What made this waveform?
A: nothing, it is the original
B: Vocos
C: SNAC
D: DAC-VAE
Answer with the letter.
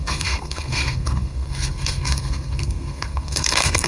C